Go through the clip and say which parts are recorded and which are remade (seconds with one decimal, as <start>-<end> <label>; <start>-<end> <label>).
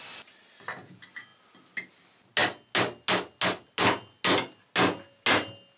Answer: 0.0-5.8 recorded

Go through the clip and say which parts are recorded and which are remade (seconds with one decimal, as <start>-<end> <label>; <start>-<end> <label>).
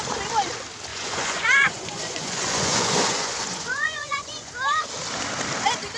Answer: 0.0-0.9 recorded; 0.9-4.5 remade; 4.5-6.0 recorded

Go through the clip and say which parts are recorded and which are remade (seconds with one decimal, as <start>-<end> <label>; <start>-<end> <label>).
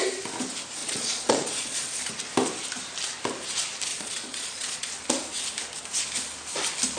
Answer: 0.0-0.8 recorded; 0.8-2.1 remade; 2.1-3.9 recorded; 3.9-4.9 remade; 4.9-7.0 recorded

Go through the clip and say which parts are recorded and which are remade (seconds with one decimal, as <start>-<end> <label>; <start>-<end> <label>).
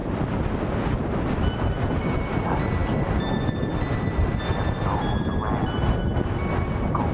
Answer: 0.0-7.1 recorded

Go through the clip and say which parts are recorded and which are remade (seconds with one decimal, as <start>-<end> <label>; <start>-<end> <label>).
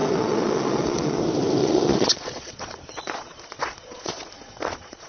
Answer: 0.0-1.2 remade; 1.2-1.6 recorded; 1.6-5.1 remade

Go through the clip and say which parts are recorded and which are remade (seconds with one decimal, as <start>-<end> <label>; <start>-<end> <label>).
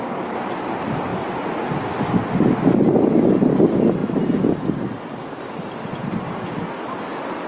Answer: 0.0-7.5 recorded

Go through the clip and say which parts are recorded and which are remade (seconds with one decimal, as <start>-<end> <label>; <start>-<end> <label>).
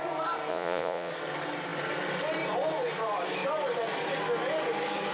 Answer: 0.0-0.5 recorded; 0.5-1.1 remade; 1.1-5.1 recorded